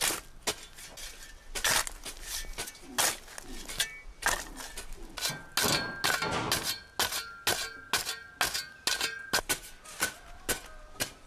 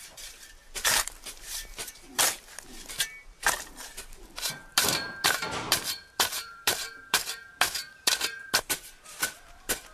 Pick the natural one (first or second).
first